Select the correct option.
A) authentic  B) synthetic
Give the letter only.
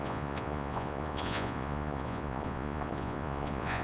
B